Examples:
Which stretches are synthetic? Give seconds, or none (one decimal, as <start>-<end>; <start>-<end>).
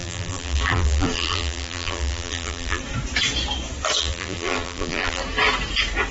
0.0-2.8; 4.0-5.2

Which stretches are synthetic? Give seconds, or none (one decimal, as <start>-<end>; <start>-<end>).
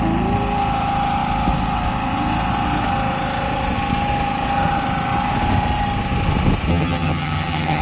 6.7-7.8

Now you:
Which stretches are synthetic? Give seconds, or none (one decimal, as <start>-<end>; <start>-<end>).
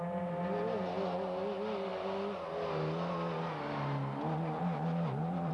none